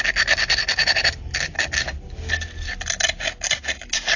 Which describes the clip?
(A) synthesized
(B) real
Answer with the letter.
B